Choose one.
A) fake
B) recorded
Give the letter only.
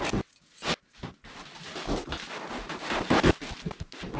B